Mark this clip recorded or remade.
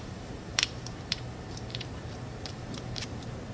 remade